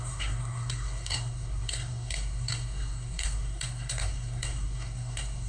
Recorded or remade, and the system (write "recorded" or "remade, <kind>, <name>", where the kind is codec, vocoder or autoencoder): remade, codec, SNAC